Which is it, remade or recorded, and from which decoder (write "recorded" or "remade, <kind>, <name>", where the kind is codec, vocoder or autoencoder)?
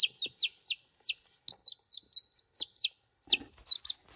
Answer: recorded